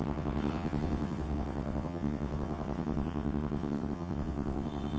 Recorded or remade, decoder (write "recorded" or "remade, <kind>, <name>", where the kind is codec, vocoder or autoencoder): remade, vocoder, WaveNeXt